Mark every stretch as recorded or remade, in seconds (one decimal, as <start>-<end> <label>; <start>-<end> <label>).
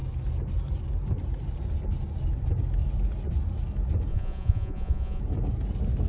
0.0-4.1 recorded; 4.1-5.2 remade; 5.2-6.1 recorded